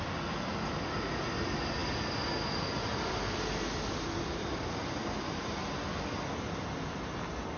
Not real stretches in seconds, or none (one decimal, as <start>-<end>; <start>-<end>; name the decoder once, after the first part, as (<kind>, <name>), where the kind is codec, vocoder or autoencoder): none